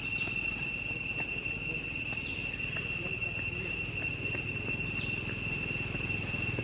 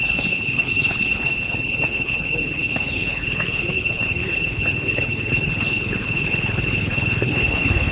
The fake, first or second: second